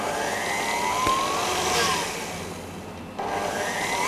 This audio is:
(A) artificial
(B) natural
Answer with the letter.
B